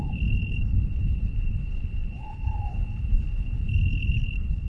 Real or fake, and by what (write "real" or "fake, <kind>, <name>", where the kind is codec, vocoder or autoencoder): fake, codec, HILCodec